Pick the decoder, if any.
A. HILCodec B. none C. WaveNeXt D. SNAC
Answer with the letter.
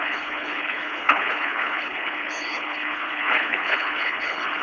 A